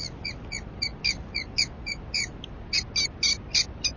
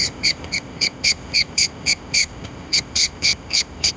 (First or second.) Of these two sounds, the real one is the first